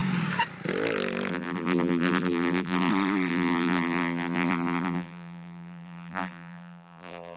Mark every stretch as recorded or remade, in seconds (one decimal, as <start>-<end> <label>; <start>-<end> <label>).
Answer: 0.0-1.3 recorded; 1.3-2.9 remade; 2.9-3.3 recorded; 3.3-7.4 remade